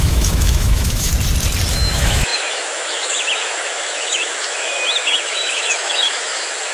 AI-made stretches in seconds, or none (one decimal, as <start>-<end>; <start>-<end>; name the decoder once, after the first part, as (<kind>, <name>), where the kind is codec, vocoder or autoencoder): 0.0-1.1 (autoencoder, DAC-VAE); 1.7-6.7